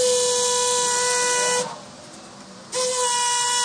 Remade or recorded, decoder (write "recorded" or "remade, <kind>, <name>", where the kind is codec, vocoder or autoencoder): recorded